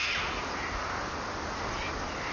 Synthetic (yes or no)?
no